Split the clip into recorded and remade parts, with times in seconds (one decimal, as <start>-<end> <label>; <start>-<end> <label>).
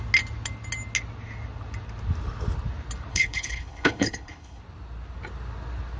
0.0-3.1 recorded; 3.1-4.6 remade; 4.6-6.0 recorded